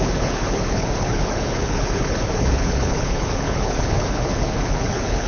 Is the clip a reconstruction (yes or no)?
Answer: yes